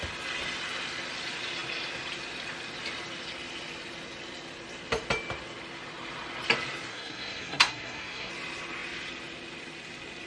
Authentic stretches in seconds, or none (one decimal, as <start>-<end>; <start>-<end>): 0.0-6.9; 8.3-10.3